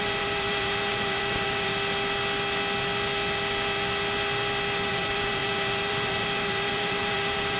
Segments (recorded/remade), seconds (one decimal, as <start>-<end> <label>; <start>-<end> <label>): 0.0-1.7 remade; 1.7-4.9 recorded; 4.9-7.6 remade